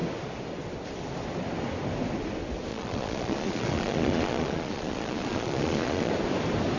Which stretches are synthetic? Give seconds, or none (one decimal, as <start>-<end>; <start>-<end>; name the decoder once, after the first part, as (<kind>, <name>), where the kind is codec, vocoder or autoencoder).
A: 2.7-6.1 (vocoder, Vocos)